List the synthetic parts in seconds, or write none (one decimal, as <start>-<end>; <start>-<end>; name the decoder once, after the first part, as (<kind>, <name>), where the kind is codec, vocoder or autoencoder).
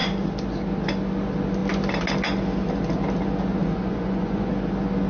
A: 3.6-4.5 (vocoder, Vocos)